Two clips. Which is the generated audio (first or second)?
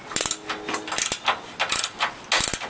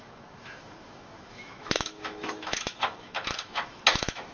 second